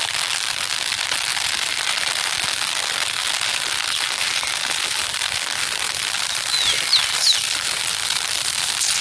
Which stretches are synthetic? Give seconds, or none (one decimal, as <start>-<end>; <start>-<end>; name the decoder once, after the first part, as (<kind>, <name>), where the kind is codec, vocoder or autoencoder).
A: none